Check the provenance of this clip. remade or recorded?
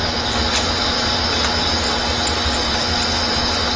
recorded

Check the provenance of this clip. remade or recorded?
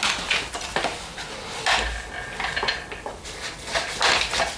recorded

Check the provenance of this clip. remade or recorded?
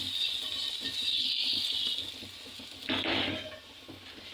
recorded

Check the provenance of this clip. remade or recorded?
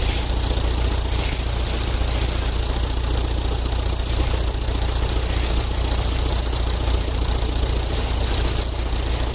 recorded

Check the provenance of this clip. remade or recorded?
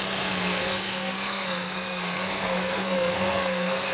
remade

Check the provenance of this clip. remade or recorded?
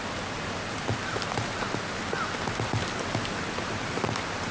recorded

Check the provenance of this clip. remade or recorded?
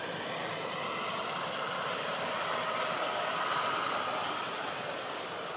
recorded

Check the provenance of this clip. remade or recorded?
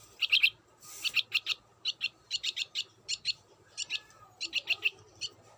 remade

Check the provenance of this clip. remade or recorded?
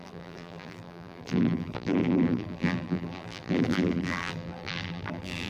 remade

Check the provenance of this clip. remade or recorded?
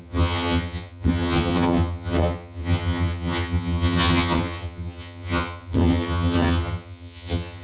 remade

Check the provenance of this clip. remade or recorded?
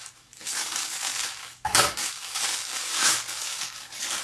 remade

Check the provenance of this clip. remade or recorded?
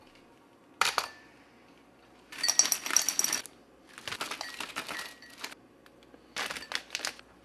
recorded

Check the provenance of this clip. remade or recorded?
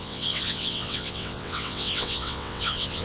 remade